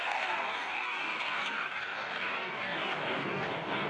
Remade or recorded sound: remade